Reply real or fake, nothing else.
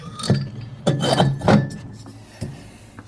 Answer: real